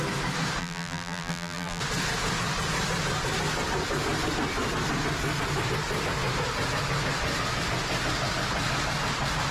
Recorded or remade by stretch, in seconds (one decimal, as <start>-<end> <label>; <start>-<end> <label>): 0.0-0.6 recorded; 0.6-1.8 remade; 1.8-9.5 recorded